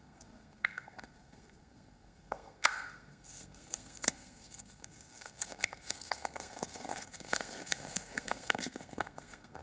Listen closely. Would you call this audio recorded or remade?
remade